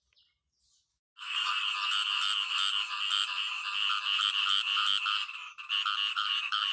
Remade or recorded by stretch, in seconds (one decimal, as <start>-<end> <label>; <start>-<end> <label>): 0.0-0.9 recorded; 0.9-1.5 remade; 1.5-6.1 recorded; 6.1-6.7 remade